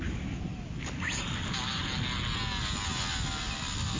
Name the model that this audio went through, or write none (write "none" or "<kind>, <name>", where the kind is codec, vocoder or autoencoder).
none